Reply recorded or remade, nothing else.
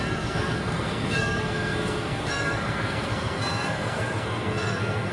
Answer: remade